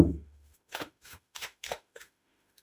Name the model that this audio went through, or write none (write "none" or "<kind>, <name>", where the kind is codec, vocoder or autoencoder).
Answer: autoencoder, DAC-VAE